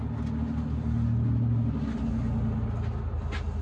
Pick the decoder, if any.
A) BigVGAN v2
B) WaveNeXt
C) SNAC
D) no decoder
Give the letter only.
D